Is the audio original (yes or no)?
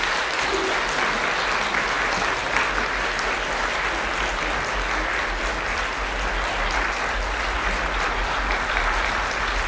yes